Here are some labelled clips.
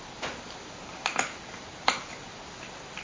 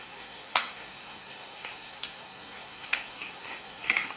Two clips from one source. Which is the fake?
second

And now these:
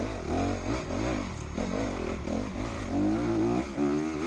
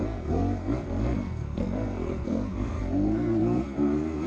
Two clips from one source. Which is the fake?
second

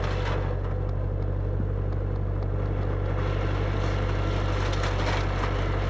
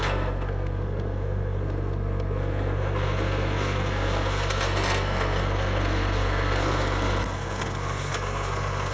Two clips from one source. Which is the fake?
second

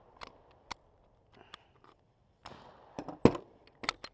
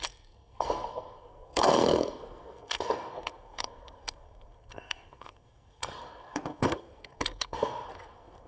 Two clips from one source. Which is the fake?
second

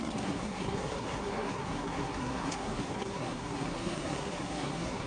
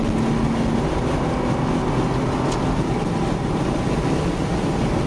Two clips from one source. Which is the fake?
first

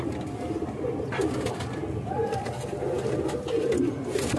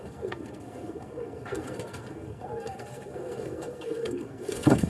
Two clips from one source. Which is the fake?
second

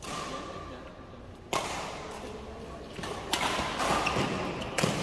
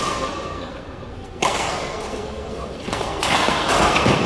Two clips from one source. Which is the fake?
second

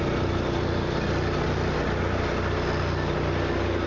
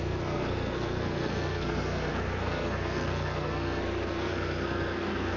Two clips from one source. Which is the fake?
second